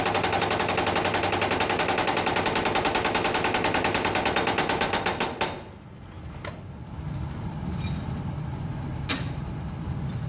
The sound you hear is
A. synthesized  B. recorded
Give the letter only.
B